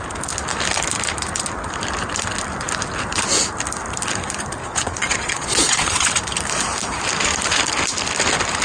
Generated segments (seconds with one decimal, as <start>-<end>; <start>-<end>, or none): 4.6-6.1